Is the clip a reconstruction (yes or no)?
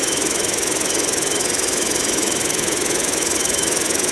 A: yes